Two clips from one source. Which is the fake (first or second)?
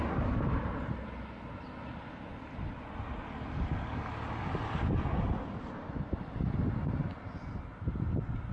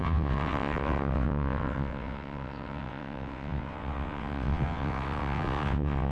second